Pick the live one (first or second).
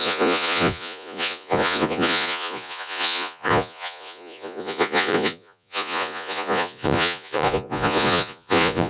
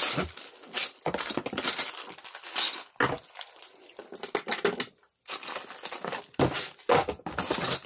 second